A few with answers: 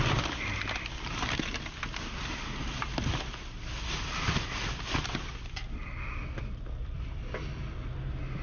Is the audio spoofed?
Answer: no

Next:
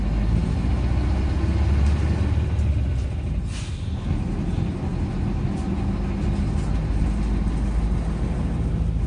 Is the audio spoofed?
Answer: no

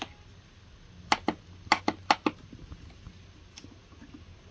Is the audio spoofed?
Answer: no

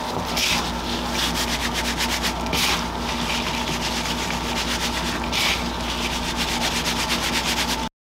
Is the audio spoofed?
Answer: no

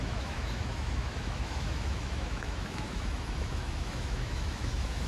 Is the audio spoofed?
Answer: yes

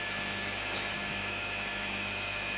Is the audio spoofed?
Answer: yes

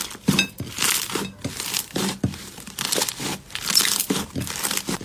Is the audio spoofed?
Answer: no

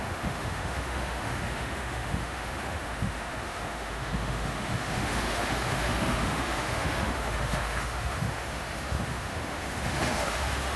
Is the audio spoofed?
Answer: yes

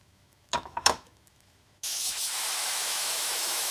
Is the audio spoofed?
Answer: yes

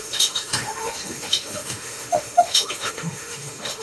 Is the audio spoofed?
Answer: yes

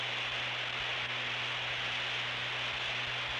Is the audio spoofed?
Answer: no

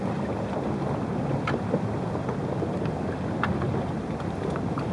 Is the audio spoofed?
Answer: no